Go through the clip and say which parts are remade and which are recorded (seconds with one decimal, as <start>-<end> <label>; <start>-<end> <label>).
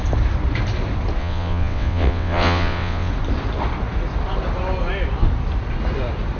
0.0-1.2 recorded; 1.2-3.1 remade; 3.1-6.4 recorded